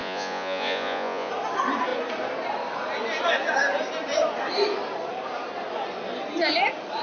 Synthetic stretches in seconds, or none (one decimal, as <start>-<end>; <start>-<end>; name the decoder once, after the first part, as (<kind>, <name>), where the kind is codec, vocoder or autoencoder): 0.0-1.3 (vocoder, Vocos)